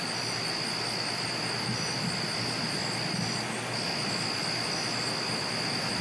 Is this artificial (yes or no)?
no